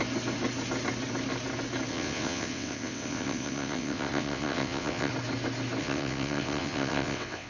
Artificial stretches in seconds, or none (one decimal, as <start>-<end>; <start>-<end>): 1.9-5.1; 5.8-7.5